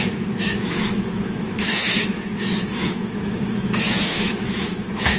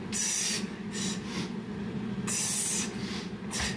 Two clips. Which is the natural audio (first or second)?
second